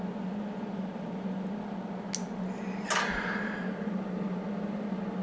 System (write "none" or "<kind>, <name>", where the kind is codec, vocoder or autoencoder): none